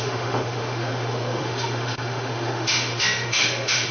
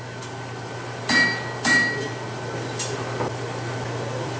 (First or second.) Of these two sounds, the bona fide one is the second